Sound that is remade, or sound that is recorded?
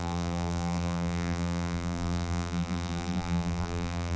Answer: remade